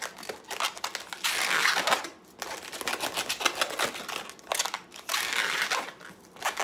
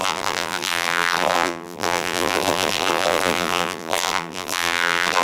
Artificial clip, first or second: second